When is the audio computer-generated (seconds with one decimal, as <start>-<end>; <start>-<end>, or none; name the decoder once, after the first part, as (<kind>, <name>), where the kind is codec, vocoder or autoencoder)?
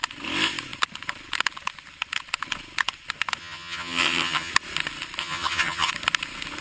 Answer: 3.4-4.5 (vocoder, HiFi-GAN); 5.2-5.9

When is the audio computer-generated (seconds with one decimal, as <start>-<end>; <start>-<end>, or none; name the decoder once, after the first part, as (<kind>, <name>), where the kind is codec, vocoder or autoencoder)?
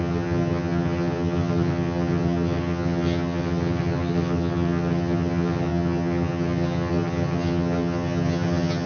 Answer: 0.0-8.9 (vocoder, HiFi-GAN)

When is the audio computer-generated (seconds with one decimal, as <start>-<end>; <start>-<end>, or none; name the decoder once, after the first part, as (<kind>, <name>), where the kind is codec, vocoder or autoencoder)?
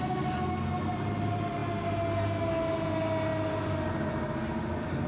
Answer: none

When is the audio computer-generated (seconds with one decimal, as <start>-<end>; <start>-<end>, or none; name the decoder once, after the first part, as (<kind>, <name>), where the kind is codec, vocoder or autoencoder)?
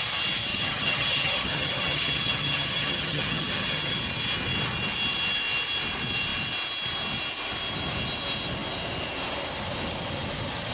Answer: 0.5-4.0 (vocoder, HiFi-GAN)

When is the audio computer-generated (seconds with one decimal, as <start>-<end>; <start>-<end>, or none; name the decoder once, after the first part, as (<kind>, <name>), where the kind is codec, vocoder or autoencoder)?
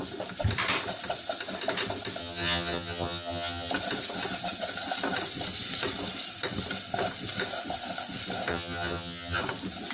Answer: 2.2-3.7 (vocoder, HiFi-GAN); 8.5-9.4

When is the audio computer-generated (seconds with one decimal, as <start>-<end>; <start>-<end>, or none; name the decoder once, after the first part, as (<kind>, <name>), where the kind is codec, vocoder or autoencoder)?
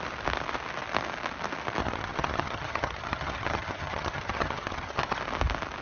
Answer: 1.8-5.2 (vocoder, HiFi-GAN)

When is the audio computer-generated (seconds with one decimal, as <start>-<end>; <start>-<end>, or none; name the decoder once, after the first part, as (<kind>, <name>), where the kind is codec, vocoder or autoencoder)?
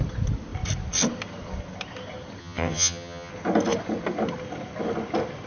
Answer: 2.4-3.3 (vocoder, HiFi-GAN)